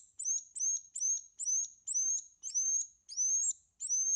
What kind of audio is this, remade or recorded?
recorded